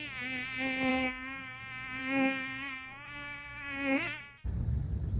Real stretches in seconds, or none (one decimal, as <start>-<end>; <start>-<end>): 0.0-0.9; 1.6-2.0; 4.2-5.2